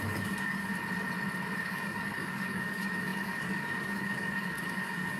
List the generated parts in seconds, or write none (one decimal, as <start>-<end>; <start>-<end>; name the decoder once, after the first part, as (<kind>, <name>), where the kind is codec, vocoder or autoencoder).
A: 0.0-0.7 (codec, DAC); 1.6-5.2